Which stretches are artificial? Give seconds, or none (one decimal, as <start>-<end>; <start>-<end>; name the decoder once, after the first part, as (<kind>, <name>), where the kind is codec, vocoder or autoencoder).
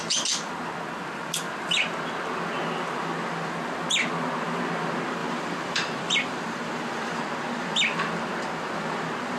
5.2-7.2 (vocoder, BigVGAN v2)